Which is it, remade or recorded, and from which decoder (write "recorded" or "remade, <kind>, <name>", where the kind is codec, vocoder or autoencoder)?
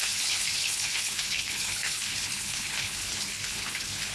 remade, codec, HILCodec